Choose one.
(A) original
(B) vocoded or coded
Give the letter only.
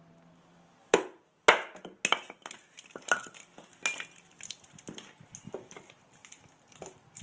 A